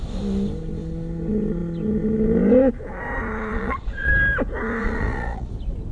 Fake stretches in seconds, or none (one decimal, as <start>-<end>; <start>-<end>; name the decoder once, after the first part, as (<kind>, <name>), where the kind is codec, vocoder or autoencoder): 3.5-4.1 (vocoder, Vocos); 4.8-5.5

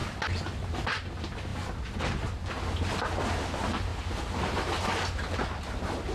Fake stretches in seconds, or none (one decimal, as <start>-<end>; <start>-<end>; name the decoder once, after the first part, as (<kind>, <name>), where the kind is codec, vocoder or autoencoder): none